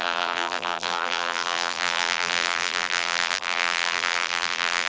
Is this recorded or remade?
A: remade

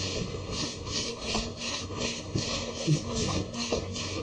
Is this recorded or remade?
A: remade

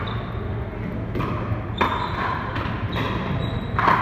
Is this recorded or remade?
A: recorded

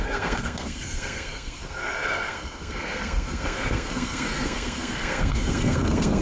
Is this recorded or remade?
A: remade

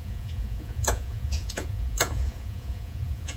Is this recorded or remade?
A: remade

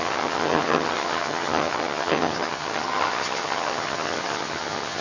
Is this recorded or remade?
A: remade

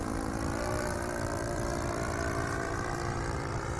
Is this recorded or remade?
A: remade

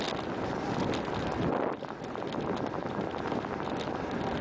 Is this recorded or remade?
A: recorded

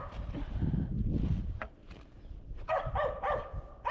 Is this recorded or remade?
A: remade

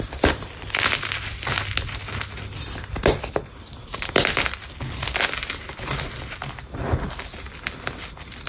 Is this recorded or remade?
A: recorded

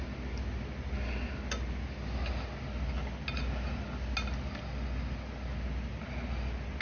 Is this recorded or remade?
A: recorded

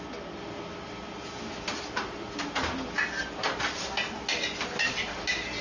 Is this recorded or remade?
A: recorded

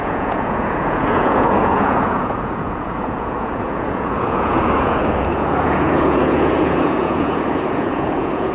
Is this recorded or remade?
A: remade